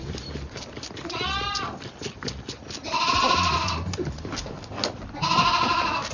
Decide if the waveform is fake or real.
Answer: real